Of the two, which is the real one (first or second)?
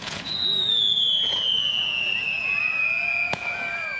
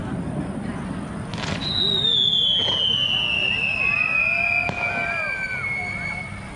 second